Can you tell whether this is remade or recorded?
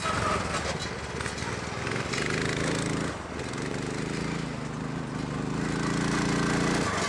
recorded